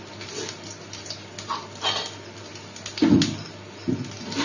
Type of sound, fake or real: real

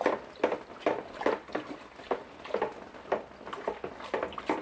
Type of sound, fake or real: real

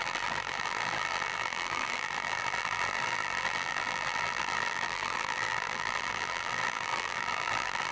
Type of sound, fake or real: fake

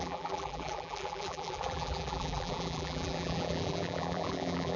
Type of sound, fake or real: fake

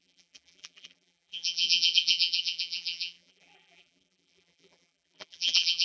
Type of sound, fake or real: fake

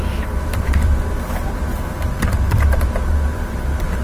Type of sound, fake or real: fake